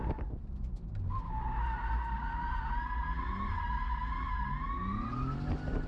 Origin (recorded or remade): recorded